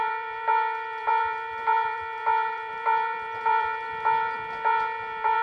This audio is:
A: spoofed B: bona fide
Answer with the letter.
A